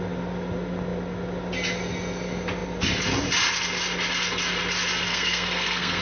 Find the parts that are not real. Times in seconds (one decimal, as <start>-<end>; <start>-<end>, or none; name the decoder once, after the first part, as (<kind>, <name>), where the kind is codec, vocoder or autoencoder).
5.1-6.0 (codec, SNAC)